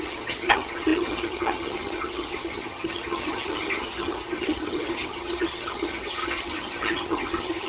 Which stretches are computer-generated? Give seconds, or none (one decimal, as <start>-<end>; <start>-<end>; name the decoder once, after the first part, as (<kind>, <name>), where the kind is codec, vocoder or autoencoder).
0.0-7.7 (vocoder, HiFi-GAN)